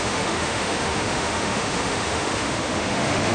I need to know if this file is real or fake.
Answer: fake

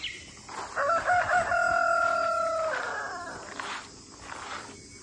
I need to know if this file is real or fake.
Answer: real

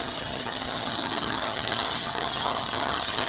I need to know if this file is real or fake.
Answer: fake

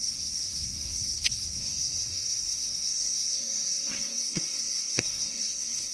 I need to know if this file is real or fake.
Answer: fake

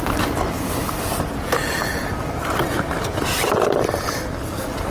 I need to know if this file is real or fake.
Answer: real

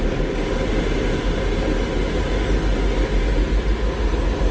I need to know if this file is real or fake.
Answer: real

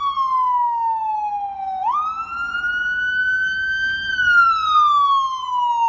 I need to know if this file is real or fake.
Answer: real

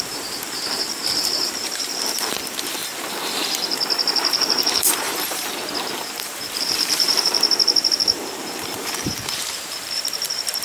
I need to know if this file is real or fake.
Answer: fake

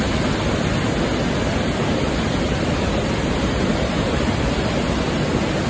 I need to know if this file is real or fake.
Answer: real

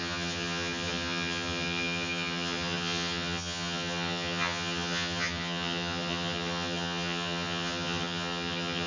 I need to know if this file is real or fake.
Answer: fake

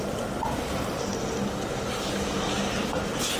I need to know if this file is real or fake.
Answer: real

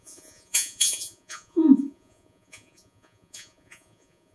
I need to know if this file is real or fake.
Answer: fake